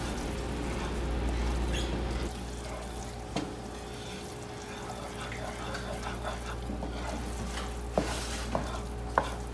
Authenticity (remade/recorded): recorded